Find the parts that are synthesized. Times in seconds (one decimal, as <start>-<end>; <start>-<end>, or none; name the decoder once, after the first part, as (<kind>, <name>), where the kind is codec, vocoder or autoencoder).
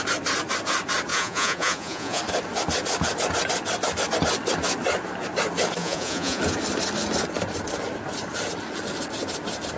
1.1-2.2 (vocoder, Vocos); 5.8-6.4